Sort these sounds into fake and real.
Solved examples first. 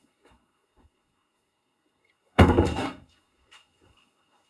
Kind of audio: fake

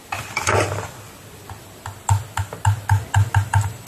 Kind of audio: real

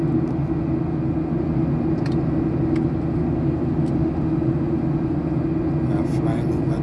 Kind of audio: real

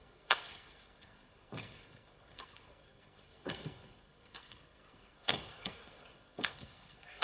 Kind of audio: fake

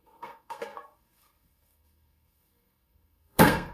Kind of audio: fake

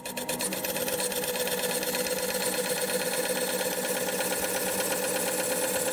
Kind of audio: real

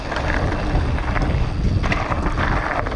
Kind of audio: real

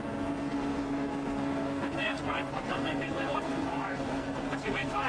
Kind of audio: fake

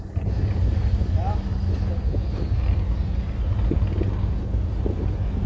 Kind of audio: real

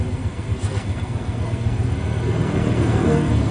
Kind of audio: fake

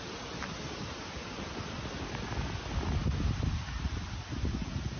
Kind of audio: real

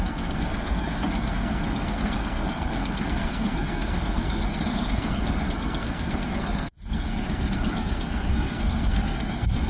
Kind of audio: fake